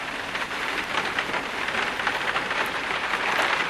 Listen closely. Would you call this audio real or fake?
fake